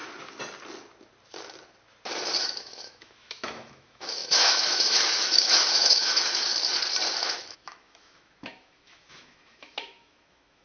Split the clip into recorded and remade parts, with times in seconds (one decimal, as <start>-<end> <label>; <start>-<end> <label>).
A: 0.0-2.4 recorded; 2.4-6.5 remade; 6.5-7.2 recorded; 7.2-10.6 remade